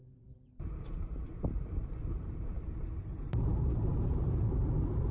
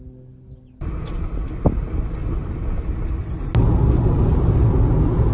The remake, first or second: first